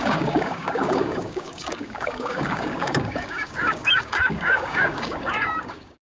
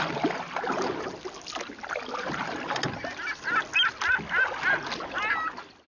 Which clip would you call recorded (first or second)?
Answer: second